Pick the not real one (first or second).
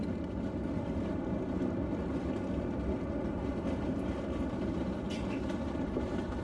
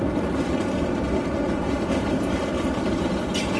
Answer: second